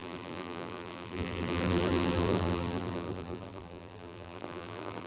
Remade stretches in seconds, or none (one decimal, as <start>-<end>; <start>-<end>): 0.0-5.1